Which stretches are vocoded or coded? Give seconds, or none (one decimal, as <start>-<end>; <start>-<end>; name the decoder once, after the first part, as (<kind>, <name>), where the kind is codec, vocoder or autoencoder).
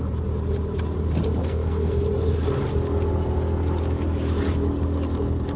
1.4-2.0 (codec, SNAC)